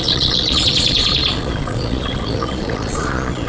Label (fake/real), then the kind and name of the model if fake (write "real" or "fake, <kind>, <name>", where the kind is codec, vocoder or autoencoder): fake, vocoder, Vocos